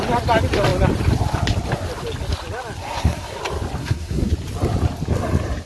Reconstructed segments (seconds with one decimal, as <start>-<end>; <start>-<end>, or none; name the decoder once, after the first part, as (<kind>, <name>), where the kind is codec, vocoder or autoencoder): 2.8-3.4 (codec, SNAC); 3.8-4.3